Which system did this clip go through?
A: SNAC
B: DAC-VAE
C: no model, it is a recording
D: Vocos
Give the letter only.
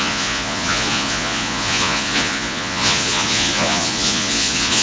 D